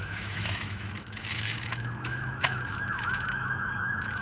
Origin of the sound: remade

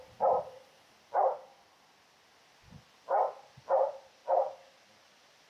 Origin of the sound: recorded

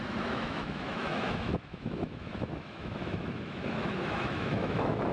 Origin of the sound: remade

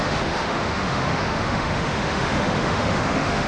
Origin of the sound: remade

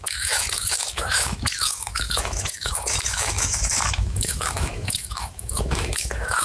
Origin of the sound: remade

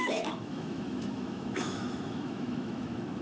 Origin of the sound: remade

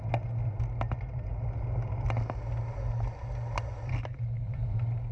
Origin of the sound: recorded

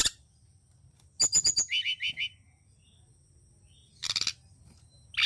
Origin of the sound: recorded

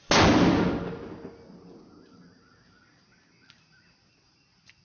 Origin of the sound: recorded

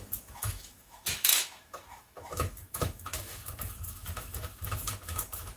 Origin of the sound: remade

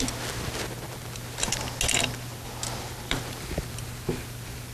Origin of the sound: recorded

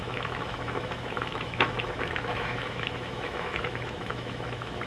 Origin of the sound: remade